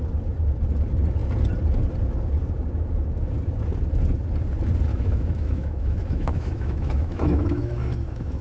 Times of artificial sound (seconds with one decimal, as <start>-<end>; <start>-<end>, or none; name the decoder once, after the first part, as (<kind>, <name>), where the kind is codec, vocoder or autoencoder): 4.9-8.4 (autoencoder, DAC-VAE)